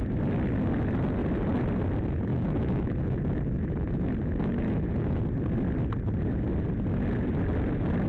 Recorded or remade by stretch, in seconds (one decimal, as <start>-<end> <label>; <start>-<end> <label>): 0.0-2.3 recorded; 2.3-5.2 remade; 5.2-8.1 recorded